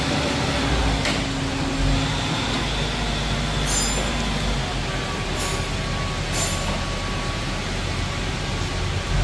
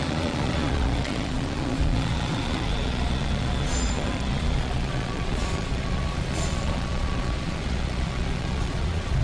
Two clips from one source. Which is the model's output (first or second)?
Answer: second